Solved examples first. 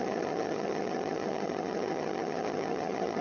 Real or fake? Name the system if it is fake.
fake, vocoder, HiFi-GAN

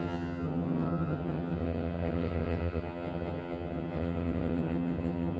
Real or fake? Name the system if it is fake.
fake, vocoder, HiFi-GAN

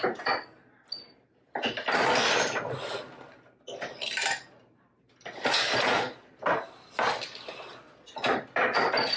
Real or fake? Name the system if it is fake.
real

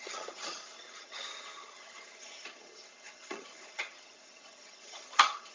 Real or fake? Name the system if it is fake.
fake, vocoder, HiFi-GAN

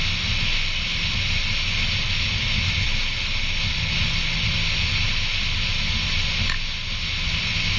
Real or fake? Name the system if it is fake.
real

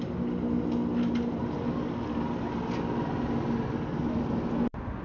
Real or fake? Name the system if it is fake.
real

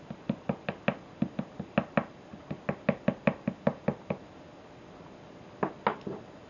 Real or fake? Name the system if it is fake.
real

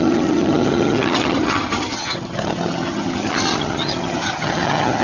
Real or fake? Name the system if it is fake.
fake, vocoder, HiFi-GAN